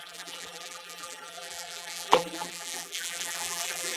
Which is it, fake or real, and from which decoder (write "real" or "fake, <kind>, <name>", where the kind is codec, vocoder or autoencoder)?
fake, vocoder, BigVGAN v2